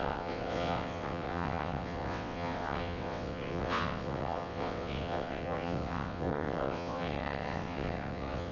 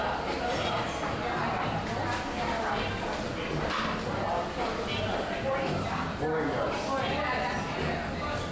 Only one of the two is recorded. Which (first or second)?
second